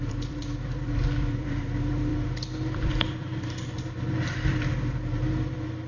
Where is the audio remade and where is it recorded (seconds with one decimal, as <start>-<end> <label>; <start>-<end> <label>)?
0.0-5.9 remade